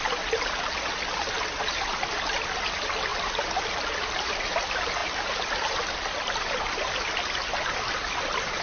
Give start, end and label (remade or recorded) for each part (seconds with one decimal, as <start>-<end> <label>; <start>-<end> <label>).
0.0-8.6 recorded